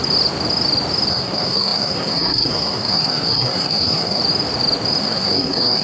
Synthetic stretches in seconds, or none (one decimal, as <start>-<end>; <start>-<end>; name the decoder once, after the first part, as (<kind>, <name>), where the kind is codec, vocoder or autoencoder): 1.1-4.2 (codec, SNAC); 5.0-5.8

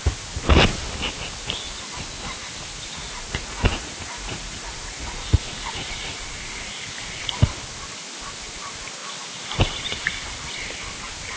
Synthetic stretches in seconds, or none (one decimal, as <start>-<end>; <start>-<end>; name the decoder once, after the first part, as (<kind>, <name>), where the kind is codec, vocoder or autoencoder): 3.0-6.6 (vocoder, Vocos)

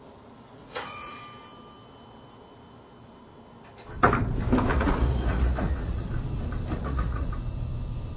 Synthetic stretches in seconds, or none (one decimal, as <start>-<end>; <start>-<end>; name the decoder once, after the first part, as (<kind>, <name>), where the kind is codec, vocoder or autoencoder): 0.6-1.2 (vocoder, Vocos); 4.7-6.1; 6.8-7.3